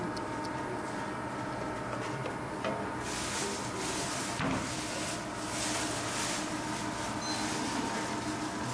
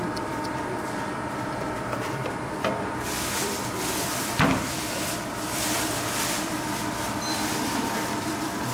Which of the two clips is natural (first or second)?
first